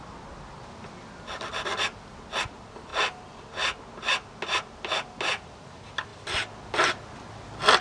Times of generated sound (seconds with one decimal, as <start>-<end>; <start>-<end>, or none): none

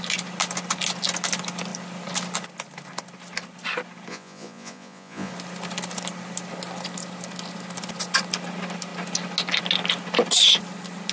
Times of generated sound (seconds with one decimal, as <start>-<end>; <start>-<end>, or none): 4.1-5.3

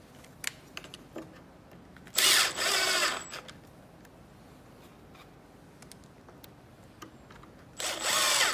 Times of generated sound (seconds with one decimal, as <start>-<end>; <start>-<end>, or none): none

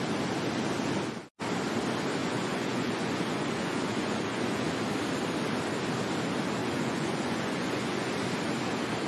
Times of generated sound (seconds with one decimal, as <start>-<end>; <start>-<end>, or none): 2.2-4.7; 6.6-8.1

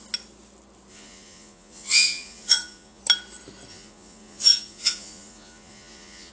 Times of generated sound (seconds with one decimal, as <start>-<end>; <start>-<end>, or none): 0.9-3.0; 3.7-6.3

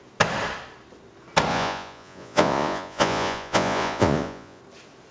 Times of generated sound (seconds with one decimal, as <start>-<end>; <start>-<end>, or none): 1.5-4.6

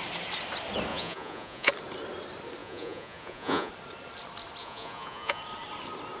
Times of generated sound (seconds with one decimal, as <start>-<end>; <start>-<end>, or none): 0.9-1.7; 2.6-3.7; 4.6-5.4

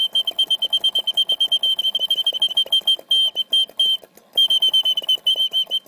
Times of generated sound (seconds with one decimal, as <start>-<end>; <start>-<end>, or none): none